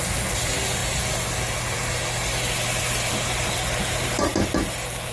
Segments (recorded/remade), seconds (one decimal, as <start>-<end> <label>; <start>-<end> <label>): 0.0-5.1 recorded